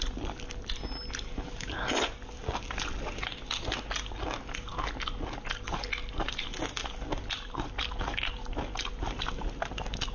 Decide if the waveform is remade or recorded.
recorded